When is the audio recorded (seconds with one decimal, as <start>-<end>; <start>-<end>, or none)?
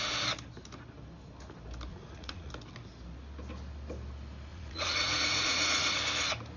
0.0-1.9; 2.5-4.5; 6.0-6.6